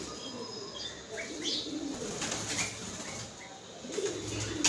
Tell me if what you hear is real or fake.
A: real